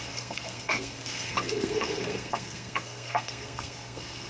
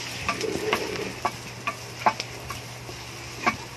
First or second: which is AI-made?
first